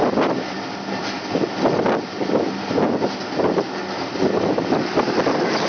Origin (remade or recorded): recorded